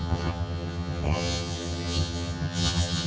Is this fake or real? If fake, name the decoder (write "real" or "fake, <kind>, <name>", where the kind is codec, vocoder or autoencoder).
fake, vocoder, HiFi-GAN